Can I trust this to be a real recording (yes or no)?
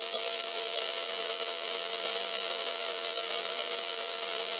no